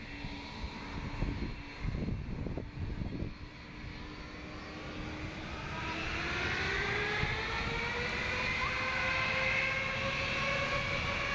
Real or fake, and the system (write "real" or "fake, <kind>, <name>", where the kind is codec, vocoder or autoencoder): real